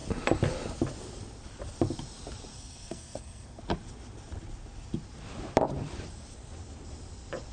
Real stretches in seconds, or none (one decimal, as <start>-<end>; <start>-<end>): 0.0-2.5; 3.6-7.5